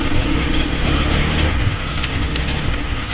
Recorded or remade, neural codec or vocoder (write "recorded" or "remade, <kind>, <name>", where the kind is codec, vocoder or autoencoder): remade, autoencoder, DAC-VAE